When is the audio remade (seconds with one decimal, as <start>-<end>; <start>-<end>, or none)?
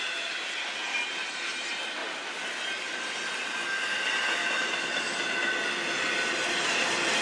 none